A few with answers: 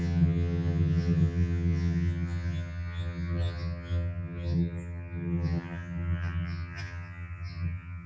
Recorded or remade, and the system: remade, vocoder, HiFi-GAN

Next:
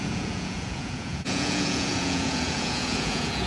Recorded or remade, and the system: remade, vocoder, Vocos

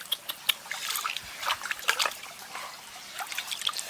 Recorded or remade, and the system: recorded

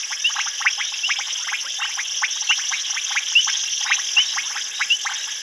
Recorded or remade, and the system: recorded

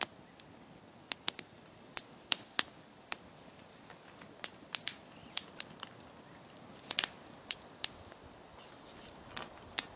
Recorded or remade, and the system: recorded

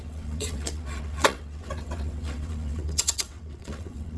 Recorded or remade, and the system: remade, vocoder, WaveNeXt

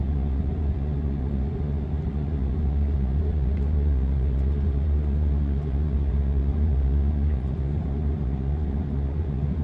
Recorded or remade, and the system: remade, vocoder, Vocos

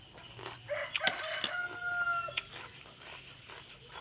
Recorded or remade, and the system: recorded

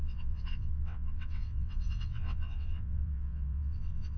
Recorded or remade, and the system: remade, vocoder, WaveNeXt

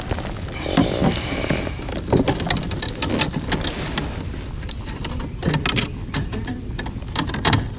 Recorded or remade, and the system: recorded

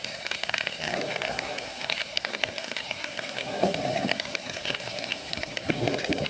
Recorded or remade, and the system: remade, codec, SNAC